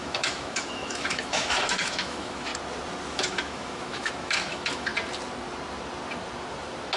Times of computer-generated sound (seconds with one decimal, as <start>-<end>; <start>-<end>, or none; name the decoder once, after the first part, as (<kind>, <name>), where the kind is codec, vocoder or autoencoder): 0.0-2.5 (autoencoder, DAC-VAE); 3.1-4.9